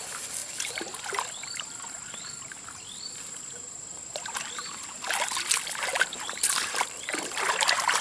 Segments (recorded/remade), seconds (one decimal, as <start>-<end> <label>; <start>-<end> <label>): 0.0-5.9 recorded; 5.9-7.1 remade; 7.1-8.0 recorded